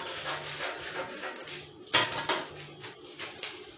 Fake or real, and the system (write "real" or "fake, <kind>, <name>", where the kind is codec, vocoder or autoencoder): real